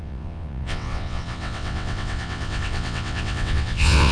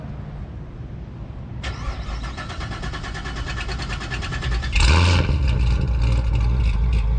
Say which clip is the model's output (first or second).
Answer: first